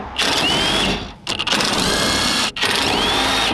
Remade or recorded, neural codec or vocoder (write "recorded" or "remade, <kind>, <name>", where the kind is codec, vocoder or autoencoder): recorded